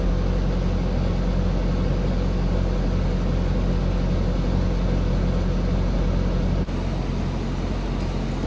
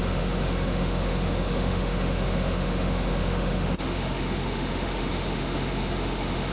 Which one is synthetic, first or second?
second